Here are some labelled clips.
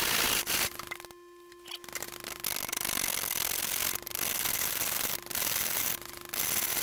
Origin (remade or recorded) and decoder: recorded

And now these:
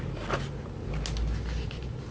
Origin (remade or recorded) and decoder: recorded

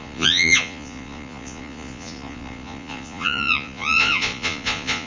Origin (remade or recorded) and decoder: remade, vocoder, Vocos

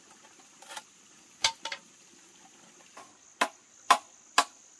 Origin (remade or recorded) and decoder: recorded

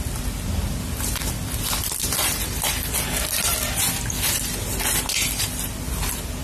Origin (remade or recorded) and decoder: remade, vocoder, BigVGAN v2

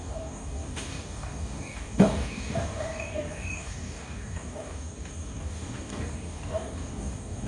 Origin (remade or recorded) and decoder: remade, codec, DAC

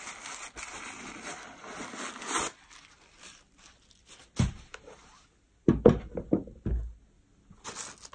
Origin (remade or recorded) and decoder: recorded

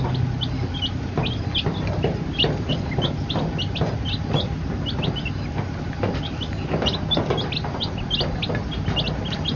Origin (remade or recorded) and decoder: recorded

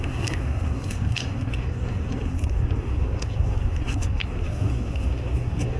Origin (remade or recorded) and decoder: remade, codec, SNAC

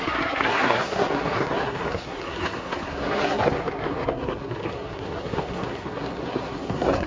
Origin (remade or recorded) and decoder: remade, codec, SNAC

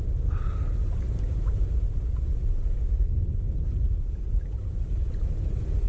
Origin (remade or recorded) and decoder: remade, vocoder, BigVGAN v2